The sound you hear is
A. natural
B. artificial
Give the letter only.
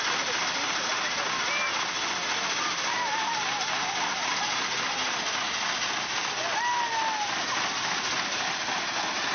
A